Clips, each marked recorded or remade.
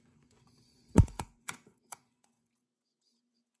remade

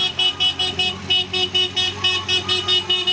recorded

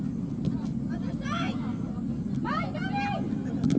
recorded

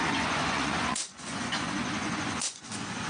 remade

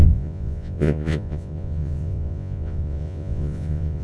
remade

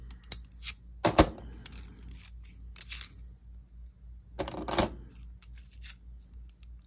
recorded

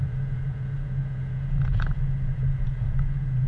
remade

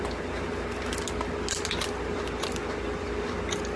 recorded